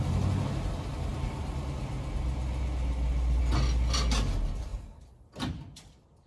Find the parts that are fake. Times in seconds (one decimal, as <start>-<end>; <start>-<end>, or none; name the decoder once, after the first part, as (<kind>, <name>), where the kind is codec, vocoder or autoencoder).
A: none